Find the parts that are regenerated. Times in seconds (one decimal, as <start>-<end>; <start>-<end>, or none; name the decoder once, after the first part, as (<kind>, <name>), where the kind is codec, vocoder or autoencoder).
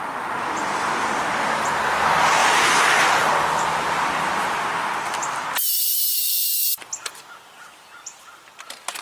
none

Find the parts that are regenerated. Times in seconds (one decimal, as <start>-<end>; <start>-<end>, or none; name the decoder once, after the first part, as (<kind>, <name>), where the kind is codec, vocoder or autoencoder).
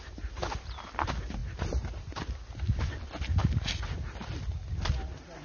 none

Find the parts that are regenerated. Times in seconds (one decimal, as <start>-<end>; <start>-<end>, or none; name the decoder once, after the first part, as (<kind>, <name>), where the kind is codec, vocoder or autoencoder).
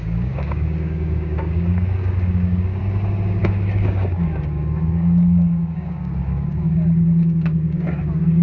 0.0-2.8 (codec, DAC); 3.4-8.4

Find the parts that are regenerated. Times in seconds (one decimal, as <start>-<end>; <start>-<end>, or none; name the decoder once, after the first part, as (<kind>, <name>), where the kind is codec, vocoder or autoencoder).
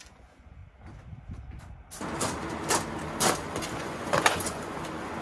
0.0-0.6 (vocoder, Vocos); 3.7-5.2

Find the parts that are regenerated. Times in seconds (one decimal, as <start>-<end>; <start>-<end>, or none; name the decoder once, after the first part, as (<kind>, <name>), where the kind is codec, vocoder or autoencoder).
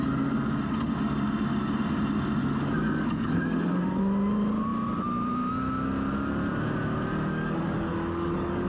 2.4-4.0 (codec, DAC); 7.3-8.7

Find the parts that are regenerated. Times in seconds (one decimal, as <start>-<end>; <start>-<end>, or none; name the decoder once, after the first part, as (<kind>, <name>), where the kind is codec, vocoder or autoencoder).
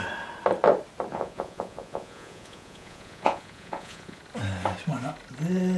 1.1-4.2 (vocoder, Vocos)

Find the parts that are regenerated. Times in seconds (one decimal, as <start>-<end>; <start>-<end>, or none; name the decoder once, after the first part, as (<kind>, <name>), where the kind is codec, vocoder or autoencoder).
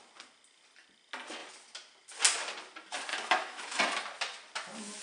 3.1-3.8 (autoencoder, DAC-VAE)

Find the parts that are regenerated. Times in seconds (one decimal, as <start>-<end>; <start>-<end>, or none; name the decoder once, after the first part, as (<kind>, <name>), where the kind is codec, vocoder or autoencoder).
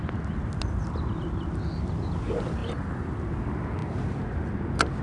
2.6-3.2 (vocoder, BigVGAN v2)